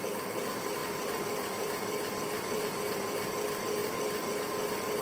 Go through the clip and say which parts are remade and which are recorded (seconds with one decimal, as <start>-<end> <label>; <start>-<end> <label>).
0.0-0.8 recorded; 0.8-2.8 remade; 2.8-3.8 recorded; 3.8-4.3 remade; 4.3-5.0 recorded